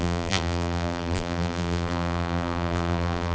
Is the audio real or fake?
fake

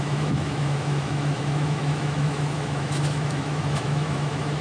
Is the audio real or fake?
fake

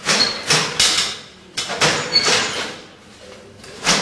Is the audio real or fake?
real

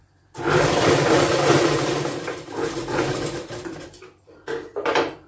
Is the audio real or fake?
fake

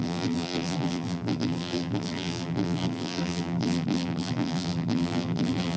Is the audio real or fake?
fake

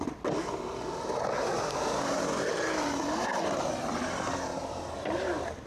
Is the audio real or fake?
real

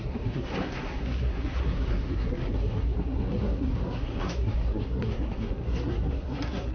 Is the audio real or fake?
fake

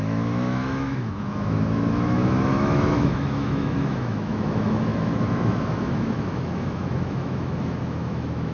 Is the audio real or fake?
fake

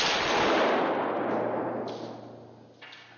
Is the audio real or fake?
real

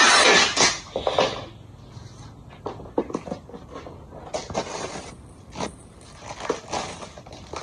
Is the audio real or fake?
real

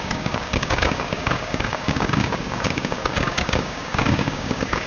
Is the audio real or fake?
fake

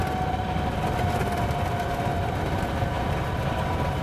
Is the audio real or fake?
real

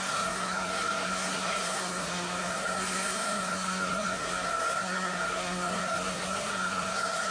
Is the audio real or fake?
fake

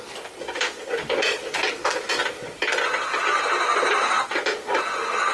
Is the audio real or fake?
real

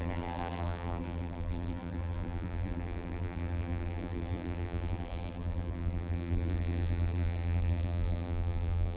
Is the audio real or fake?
fake